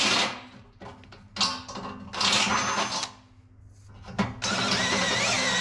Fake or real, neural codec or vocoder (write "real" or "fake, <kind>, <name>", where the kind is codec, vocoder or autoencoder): real